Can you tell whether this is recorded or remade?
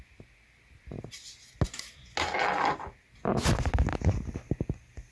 recorded